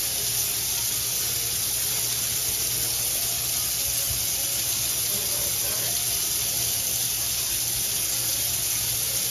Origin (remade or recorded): recorded